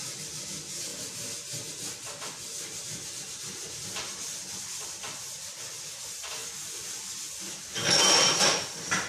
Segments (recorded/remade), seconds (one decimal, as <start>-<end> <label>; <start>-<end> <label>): 0.0-0.9 remade; 0.9-3.1 recorded; 3.1-6.4 remade; 6.4-8.0 recorded; 8.0-9.1 remade